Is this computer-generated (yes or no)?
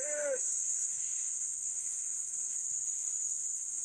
yes